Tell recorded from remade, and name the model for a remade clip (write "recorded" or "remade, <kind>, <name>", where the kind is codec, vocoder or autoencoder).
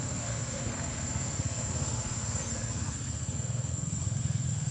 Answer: remade, codec, SNAC